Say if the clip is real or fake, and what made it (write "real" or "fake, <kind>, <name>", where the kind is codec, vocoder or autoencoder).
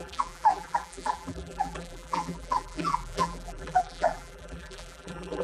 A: fake, vocoder, BigVGAN v2